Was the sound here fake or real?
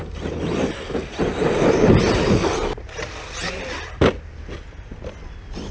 real